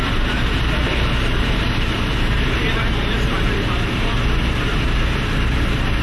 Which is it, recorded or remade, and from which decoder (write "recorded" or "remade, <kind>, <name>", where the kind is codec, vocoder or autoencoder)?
remade, vocoder, BigVGAN v2